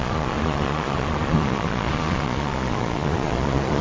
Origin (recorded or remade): remade